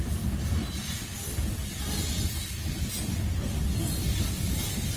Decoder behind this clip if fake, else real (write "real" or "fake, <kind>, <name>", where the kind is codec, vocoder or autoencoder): real